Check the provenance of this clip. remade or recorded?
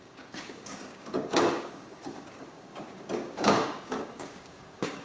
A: remade